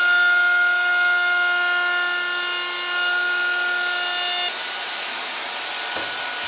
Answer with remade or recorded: recorded